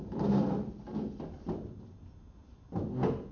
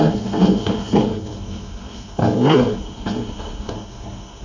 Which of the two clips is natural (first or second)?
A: first